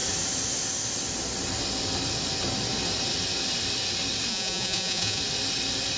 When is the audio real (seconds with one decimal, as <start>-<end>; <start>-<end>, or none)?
0.0-4.3; 5.2-6.0